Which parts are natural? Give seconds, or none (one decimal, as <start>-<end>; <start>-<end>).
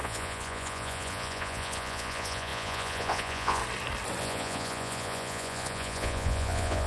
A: 3.6-4.2